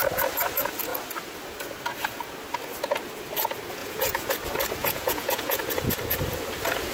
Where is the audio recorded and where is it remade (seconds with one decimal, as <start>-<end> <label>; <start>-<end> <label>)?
0.0-3.8 recorded; 3.8-4.3 remade; 4.3-4.8 recorded; 4.8-5.6 remade; 5.6-6.9 recorded